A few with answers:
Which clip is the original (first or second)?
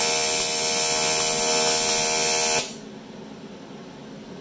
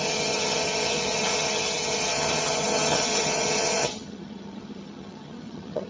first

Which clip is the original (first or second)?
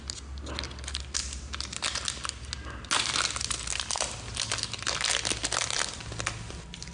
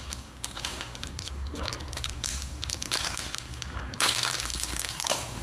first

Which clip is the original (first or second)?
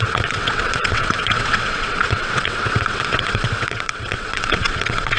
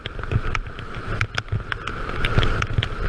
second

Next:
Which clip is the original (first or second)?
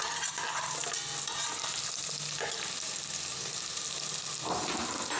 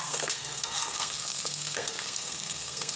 first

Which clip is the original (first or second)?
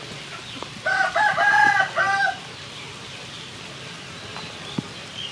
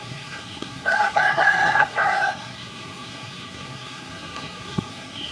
first